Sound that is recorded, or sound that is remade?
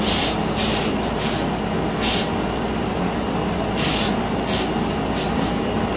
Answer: recorded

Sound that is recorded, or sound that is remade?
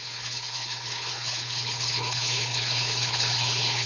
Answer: remade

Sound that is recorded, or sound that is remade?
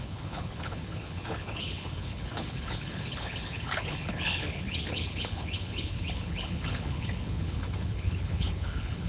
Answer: remade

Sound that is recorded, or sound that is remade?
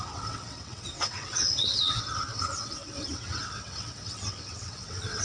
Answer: remade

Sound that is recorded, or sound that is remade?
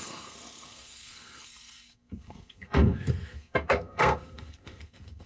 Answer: remade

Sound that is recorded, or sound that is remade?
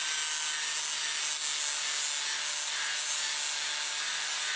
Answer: recorded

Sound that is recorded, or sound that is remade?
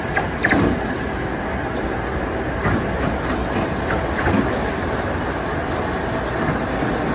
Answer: recorded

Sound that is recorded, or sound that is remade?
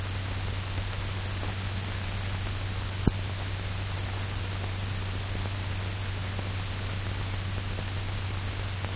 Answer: recorded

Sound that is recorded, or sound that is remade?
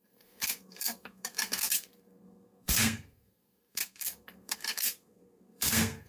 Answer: remade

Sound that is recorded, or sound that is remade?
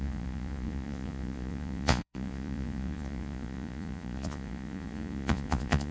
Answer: remade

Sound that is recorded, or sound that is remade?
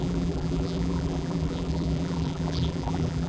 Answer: remade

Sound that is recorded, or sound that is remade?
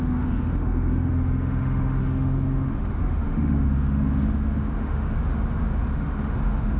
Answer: remade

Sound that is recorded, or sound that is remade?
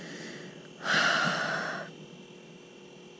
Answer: recorded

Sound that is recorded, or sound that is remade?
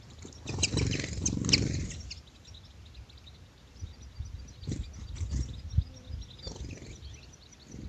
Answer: recorded